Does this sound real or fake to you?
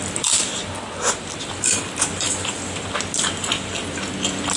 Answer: real